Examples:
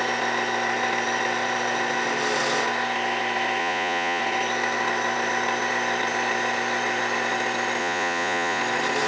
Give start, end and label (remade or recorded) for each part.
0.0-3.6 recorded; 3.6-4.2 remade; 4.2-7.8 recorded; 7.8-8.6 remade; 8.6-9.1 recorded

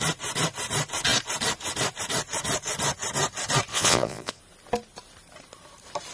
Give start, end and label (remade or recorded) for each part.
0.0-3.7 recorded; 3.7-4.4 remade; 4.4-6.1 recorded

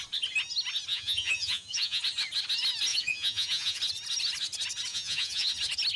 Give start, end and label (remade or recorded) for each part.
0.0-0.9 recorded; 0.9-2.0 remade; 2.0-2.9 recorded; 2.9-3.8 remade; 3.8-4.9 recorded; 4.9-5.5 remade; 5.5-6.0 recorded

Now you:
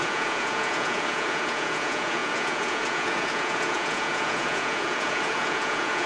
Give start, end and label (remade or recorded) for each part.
0.0-6.1 remade